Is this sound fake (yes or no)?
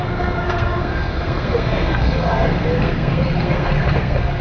yes